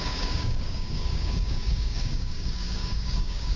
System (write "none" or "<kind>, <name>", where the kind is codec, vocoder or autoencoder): codec, DAC